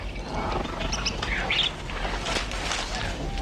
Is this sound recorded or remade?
recorded